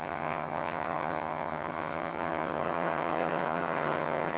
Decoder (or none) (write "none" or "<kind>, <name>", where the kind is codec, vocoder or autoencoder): vocoder, HiFi-GAN